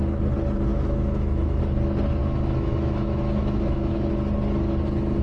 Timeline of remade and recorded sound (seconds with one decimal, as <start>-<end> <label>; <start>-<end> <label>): 0.0-0.7 recorded; 0.7-1.6 remade; 1.6-2.2 recorded; 2.2-4.1 remade; 4.1-5.2 recorded